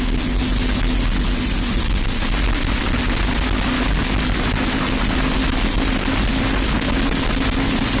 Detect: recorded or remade recorded